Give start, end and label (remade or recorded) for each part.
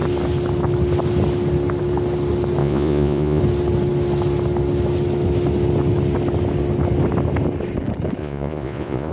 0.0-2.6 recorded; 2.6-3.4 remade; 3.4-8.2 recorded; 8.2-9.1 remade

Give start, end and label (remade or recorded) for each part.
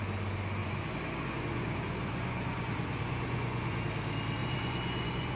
0.0-0.6 recorded; 0.6-3.8 remade; 3.8-4.4 recorded; 4.4-5.4 remade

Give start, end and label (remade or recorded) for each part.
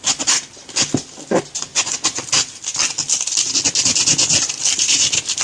0.0-1.7 recorded; 1.7-2.2 remade; 2.2-5.4 recorded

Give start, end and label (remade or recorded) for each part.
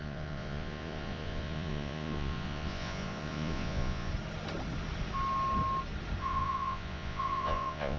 0.0-4.1 remade; 4.1-6.2 recorded; 6.2-8.0 remade